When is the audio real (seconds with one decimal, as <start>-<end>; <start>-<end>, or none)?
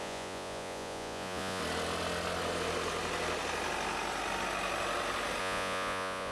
1.6-5.4